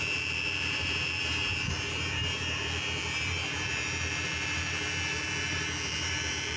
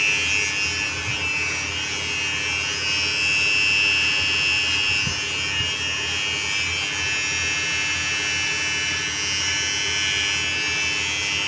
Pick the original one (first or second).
second